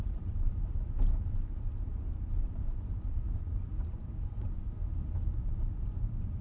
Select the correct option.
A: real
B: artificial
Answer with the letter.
B